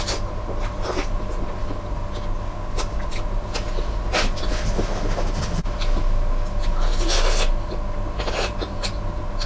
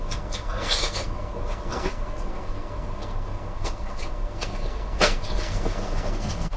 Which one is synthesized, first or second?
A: second